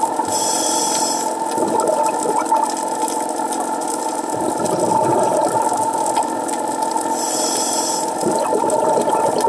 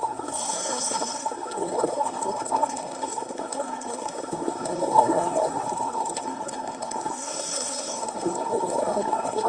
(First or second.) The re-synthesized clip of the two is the second